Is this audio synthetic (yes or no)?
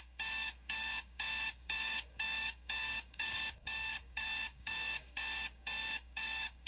yes